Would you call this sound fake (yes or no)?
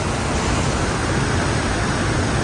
no